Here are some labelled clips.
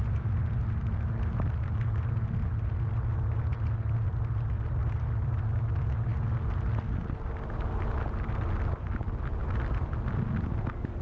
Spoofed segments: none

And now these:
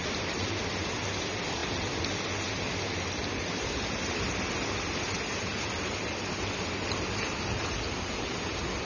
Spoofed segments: none

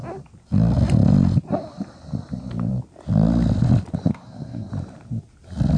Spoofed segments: 4.1-4.7 (codec, SNAC)

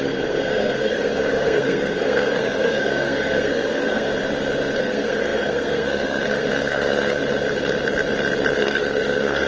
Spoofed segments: 0.0-4.1 (codec, SNAC); 4.8-7.2; 8.6-9.5

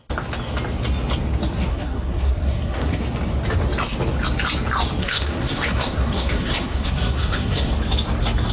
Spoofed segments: 1.7-3.0 (codec, SNAC); 5.0-7.7

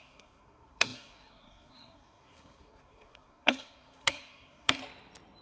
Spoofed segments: 0.0-4.8 (codec, SNAC)

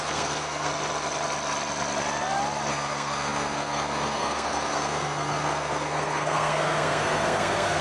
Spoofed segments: 0.0-0.7 (codec, SNAC); 2.7-7.8